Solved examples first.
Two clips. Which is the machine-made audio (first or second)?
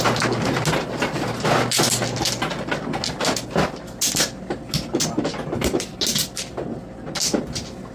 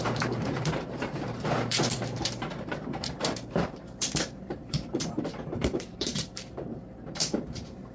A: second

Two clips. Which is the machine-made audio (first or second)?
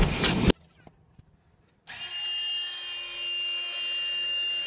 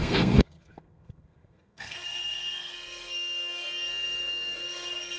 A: second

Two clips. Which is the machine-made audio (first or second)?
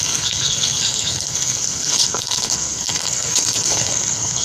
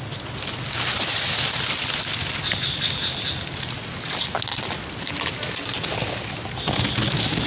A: first